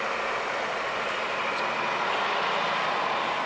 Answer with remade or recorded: recorded